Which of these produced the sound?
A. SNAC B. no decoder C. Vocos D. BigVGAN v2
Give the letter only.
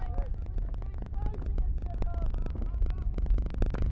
B